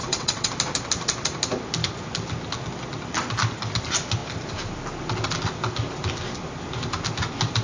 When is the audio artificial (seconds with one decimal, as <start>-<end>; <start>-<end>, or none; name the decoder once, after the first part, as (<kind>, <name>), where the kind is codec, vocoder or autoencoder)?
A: 0.0-0.5 (vocoder, WaveNeXt)